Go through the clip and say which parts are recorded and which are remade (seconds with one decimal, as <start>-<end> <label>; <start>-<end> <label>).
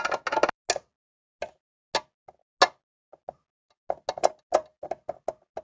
0.0-5.6 recorded